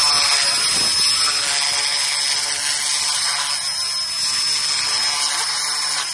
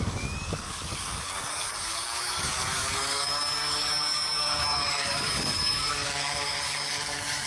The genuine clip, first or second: first